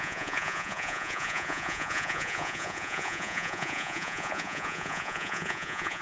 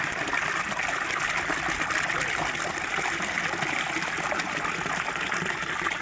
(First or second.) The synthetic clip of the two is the first